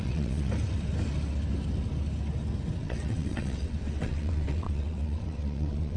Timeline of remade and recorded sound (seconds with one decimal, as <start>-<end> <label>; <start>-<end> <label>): 0.0-0.5 remade; 0.5-2.8 recorded; 2.8-6.0 remade